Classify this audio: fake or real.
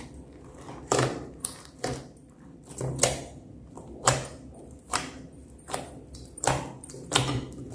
fake